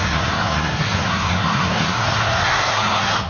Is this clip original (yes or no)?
no